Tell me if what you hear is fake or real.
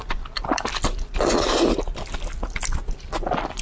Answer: real